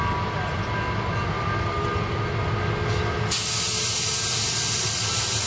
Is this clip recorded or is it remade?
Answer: recorded